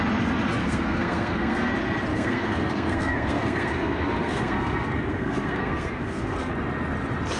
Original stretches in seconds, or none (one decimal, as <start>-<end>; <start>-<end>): 0.0-0.6; 1.7-2.1; 6.5-7.4